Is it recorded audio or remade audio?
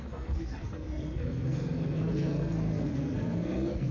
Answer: remade